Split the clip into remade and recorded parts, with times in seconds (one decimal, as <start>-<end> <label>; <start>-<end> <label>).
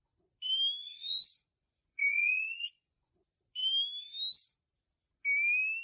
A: 0.0-0.8 recorded; 0.8-3.1 remade; 3.1-5.8 recorded